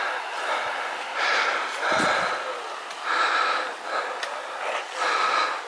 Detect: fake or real real